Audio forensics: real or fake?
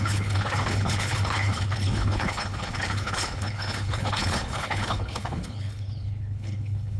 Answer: fake